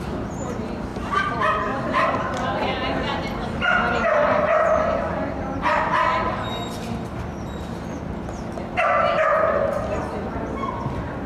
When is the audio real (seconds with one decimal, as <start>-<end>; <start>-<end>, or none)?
0.0-0.9; 2.3-11.3